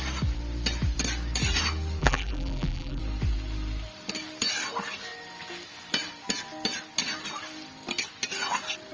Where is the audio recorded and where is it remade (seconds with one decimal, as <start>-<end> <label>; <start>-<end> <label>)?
0.0-2.0 recorded; 2.0-3.0 remade; 3.0-8.9 recorded

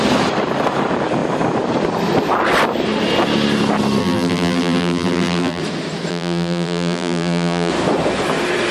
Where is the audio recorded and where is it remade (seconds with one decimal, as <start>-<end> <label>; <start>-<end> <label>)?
0.0-4.0 recorded; 4.0-5.6 remade; 5.6-6.1 recorded; 6.1-7.7 remade; 7.7-8.7 recorded